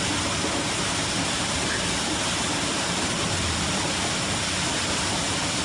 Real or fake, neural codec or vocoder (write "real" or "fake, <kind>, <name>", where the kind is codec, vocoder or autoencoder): real